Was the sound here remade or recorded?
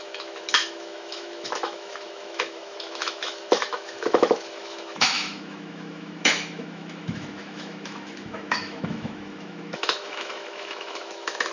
remade